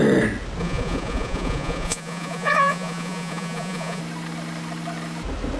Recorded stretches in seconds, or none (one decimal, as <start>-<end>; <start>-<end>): 0.0-0.6; 4.0-5.6